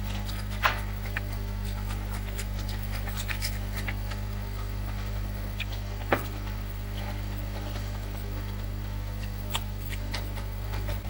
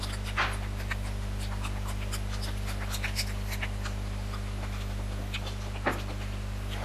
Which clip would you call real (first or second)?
second